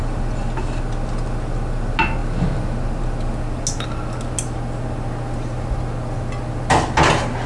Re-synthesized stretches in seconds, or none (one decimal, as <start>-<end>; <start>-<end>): none

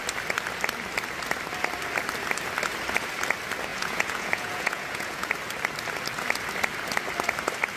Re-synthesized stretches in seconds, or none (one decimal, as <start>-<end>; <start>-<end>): 3.7-5.3

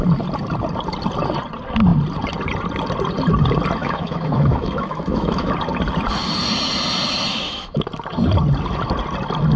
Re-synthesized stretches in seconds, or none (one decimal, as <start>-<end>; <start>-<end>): 3.8-5.5; 7.3-7.8

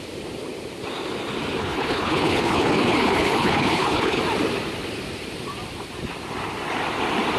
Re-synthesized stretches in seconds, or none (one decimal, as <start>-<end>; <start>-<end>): 1.6-4.2